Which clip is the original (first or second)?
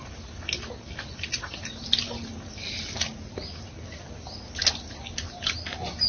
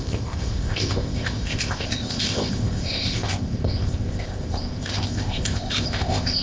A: first